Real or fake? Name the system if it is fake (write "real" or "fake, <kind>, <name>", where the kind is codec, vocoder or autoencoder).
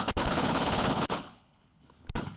fake, codec, HILCodec